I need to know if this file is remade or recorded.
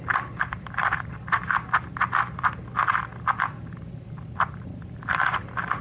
recorded